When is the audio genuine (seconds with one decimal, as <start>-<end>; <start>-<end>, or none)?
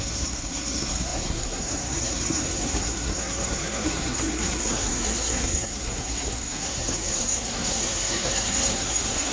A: none